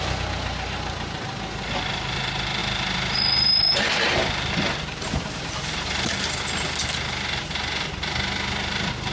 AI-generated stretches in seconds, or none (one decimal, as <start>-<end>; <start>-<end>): none